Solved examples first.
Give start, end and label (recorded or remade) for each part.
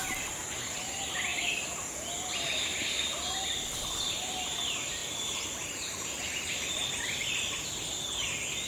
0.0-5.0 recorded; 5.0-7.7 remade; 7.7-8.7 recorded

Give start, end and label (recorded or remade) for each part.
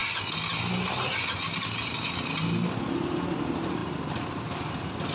0.0-3.8 recorded; 3.8-4.4 remade; 4.4-5.1 recorded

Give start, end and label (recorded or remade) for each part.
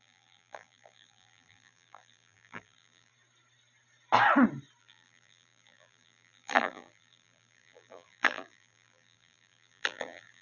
0.0-3.1 remade; 3.1-4.8 recorded; 4.8-10.4 remade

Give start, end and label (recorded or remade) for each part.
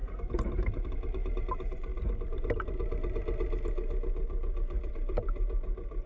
0.0-1.9 remade; 1.9-4.9 recorded; 4.9-6.1 remade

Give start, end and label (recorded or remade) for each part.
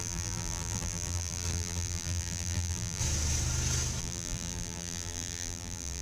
0.0-3.0 remade; 3.0-4.0 recorded; 4.0-6.0 remade